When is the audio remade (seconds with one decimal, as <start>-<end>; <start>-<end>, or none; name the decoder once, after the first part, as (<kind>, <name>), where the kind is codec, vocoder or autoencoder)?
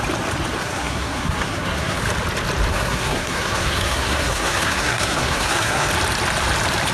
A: 0.6-2.0 (codec, SNAC); 2.7-5.9